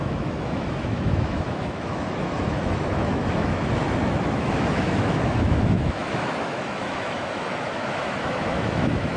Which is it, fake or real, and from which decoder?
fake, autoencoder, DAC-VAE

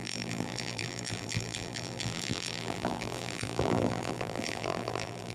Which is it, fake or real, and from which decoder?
fake, vocoder, BigVGAN v2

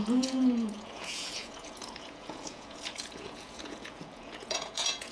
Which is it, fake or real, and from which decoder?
fake, vocoder, Vocos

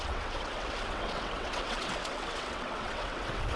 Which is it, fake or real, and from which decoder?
fake, vocoder, WaveNeXt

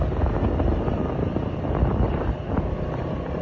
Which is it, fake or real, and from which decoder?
real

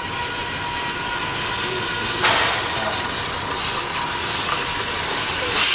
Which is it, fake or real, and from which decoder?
real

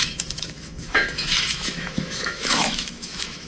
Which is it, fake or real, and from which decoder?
fake, autoencoder, DAC-VAE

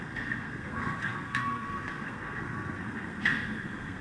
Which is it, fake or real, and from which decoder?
fake, codec, SNAC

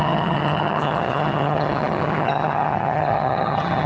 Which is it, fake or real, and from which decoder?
fake, vocoder, HiFi-GAN